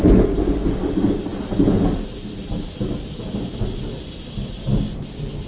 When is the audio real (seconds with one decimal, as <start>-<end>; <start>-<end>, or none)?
0.0-5.5